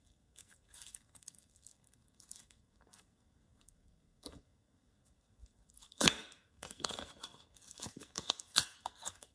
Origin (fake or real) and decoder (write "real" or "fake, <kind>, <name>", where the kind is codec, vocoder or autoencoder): fake, codec, SNAC